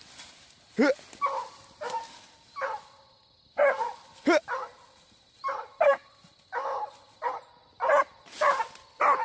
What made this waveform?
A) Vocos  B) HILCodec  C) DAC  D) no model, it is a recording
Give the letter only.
D